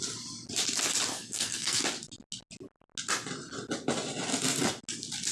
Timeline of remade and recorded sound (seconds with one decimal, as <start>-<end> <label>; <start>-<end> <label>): 0.0-1.1 recorded; 1.1-1.8 remade; 1.8-5.3 recorded

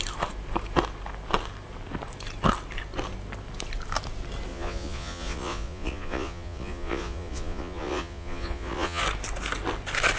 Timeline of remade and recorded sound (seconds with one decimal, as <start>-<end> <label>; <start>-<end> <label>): 0.0-4.5 recorded; 4.5-9.0 remade; 9.0-10.2 recorded

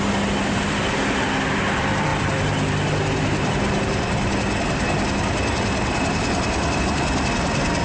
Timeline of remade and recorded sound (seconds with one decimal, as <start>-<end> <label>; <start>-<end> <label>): 0.0-7.8 recorded

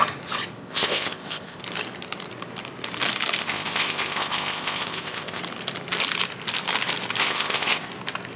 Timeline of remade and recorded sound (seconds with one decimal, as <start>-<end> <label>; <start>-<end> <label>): 0.0-0.5 recorded; 0.5-1.6 remade; 1.6-3.4 recorded; 3.4-5.4 remade; 5.4-7.2 recorded; 7.2-7.9 remade; 7.9-8.4 recorded

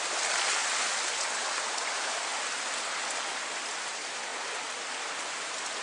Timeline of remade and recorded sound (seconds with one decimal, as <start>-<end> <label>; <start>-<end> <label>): 0.0-2.3 recorded; 2.3-3.8 remade; 3.8-4.3 recorded; 4.3-5.2 remade; 5.2-5.8 recorded